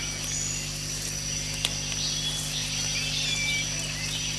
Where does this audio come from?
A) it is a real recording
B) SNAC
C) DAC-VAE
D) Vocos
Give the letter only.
A